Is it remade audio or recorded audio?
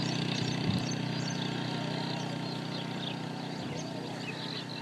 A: recorded